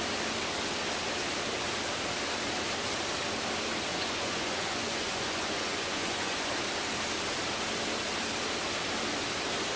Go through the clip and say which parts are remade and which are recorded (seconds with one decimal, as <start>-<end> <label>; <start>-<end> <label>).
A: 0.0-3.9 recorded; 3.9-6.5 remade; 6.5-9.8 recorded